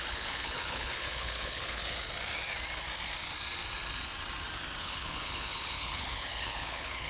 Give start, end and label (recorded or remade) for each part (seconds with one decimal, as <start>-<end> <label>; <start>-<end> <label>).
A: 0.0-1.8 remade; 1.8-4.8 recorded; 4.8-7.1 remade